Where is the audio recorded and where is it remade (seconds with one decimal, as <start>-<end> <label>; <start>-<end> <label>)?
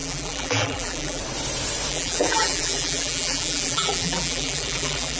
0.0-1.2 remade; 1.2-1.9 recorded; 1.9-5.2 remade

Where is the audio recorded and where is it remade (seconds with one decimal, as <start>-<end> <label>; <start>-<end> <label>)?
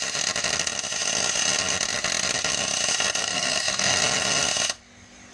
0.0-3.2 recorded; 3.2-4.0 remade; 4.0-5.3 recorded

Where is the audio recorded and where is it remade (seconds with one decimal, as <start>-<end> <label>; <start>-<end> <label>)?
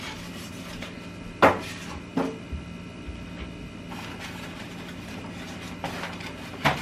0.0-6.8 recorded